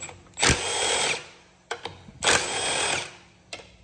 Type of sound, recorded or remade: recorded